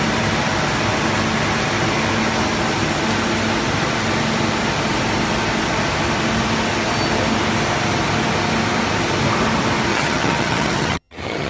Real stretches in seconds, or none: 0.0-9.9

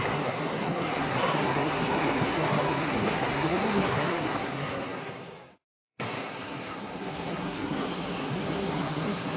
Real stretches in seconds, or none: none

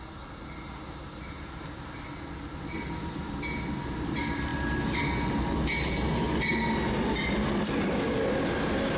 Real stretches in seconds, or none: 0.0-9.0

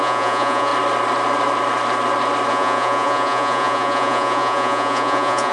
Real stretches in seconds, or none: 0.7-2.5

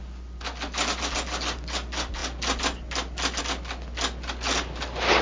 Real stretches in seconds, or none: 0.0-5.2

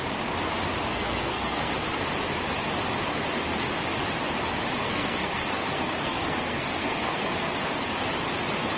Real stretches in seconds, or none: 0.0-0.9; 1.7-4.8; 7.5-8.8